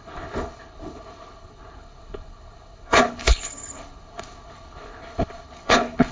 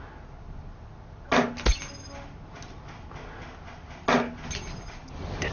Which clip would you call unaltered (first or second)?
second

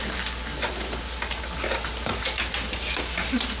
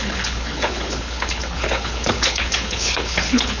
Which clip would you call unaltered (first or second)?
first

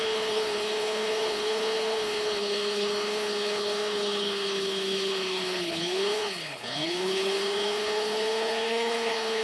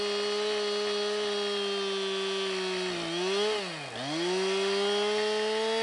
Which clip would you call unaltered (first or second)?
second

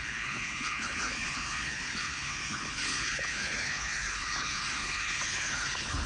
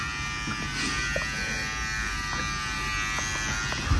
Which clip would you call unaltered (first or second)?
second